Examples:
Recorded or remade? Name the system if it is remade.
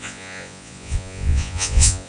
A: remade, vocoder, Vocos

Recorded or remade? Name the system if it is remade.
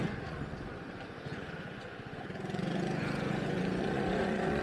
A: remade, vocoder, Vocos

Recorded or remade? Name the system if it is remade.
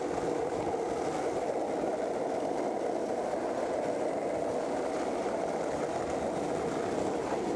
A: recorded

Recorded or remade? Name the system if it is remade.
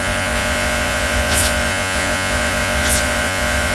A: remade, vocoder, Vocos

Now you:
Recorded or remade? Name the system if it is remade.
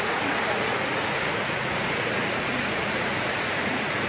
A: remade, vocoder, Vocos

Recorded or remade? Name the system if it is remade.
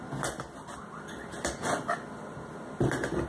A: recorded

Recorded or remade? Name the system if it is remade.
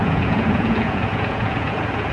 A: remade, vocoder, Vocos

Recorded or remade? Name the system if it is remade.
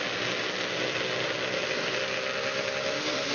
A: recorded